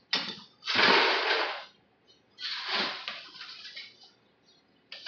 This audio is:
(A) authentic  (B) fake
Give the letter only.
A